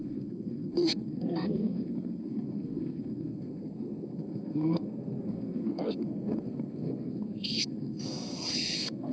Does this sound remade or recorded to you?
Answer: remade